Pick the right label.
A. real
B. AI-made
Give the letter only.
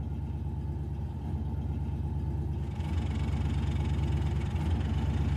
A